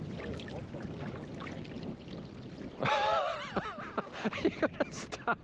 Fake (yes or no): no